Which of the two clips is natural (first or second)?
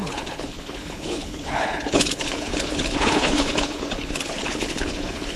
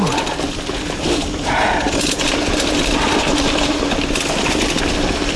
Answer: second